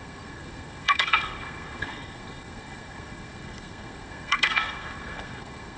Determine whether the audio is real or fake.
fake